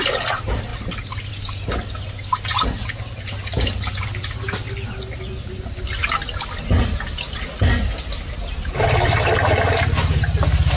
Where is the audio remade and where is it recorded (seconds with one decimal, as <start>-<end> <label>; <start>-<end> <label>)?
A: 0.0-10.8 recorded